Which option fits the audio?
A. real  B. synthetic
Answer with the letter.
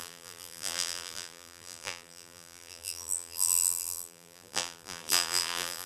B